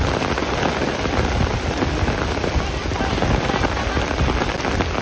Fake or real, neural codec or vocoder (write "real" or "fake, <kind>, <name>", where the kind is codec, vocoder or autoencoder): real